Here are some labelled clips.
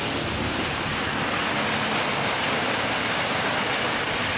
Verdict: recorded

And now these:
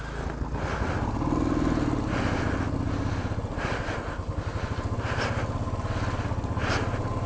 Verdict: recorded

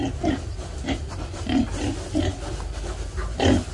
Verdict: recorded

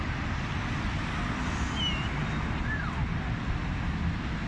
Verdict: recorded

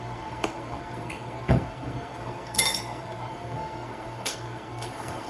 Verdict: remade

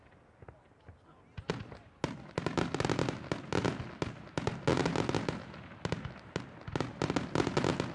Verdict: recorded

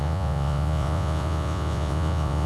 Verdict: remade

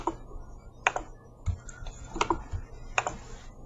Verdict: recorded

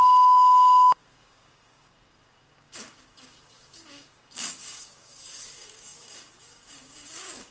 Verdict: remade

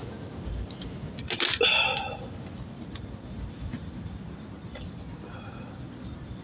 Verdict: recorded